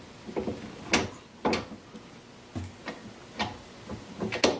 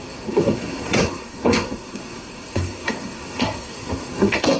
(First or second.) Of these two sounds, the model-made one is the second